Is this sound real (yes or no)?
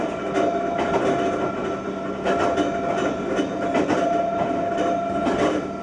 yes